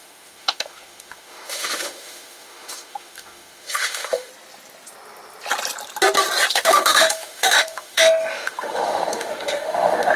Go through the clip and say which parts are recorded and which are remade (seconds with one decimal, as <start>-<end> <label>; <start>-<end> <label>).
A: 0.0-4.3 remade; 4.3-6.5 recorded; 6.5-10.2 remade